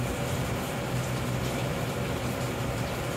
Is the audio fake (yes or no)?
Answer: yes